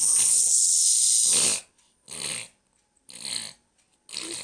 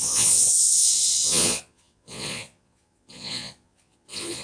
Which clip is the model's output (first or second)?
second